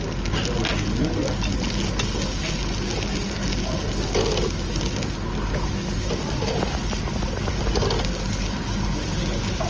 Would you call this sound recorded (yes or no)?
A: yes